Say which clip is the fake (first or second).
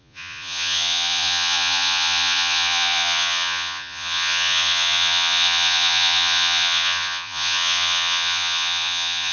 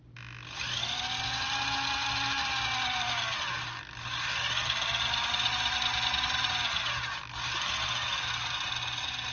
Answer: first